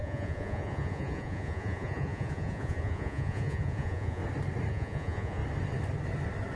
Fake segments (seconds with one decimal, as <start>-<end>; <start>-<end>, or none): 0.0-4.2; 4.7-5.4